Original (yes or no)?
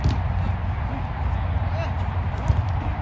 yes